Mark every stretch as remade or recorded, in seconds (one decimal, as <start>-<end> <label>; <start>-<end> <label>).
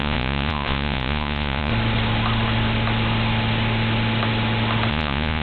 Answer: 0.0-1.7 remade; 1.7-4.9 recorded; 4.9-5.4 remade